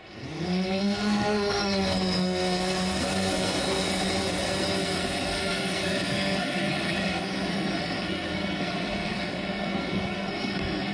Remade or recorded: remade